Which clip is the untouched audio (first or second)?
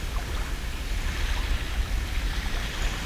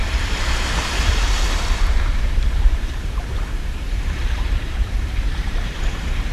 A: first